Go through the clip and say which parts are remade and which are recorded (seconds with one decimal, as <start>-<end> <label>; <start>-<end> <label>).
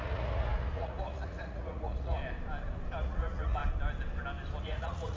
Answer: 0.0-2.2 remade; 2.2-3.0 recorded; 3.0-3.6 remade; 3.6-4.6 recorded; 4.6-5.2 remade